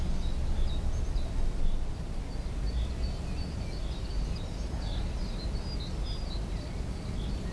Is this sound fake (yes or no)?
no